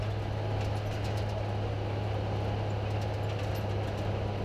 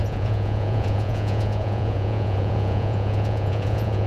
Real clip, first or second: first